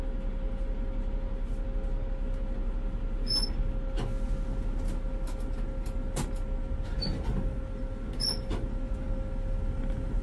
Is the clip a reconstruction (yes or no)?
no